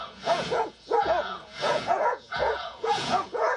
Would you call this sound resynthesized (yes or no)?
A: yes